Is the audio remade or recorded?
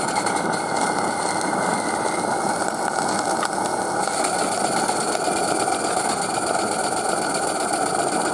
recorded